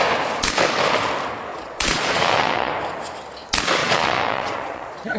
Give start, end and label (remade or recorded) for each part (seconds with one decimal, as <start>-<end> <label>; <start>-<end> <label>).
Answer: 0.0-1.5 recorded; 1.5-2.7 remade; 2.7-3.8 recorded; 3.8-5.2 remade